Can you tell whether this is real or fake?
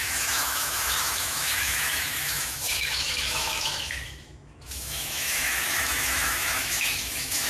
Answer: fake